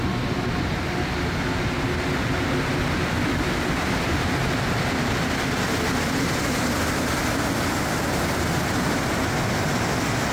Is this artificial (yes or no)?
no